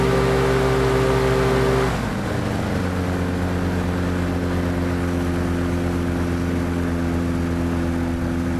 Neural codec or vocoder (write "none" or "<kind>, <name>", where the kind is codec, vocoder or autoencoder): none